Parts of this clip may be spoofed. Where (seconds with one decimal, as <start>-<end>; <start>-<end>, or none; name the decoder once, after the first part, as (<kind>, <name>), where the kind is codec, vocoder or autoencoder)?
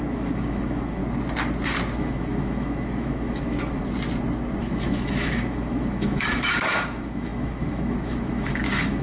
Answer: 0.0-1.0 (autoencoder, DAC-VAE); 2.0-3.8; 4.6-9.0